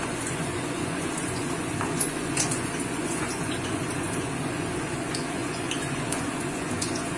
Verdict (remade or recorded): remade